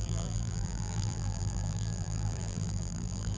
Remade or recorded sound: remade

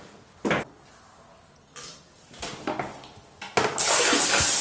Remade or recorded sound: recorded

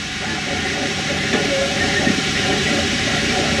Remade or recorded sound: remade